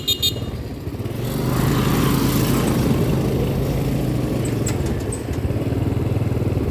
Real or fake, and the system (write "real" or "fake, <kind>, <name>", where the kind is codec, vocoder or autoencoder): real